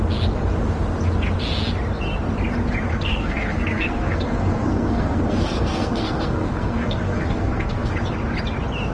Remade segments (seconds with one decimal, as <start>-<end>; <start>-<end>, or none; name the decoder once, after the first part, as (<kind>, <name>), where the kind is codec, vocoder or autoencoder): 2.9-7.9 (codec, SNAC)